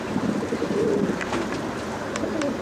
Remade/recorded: recorded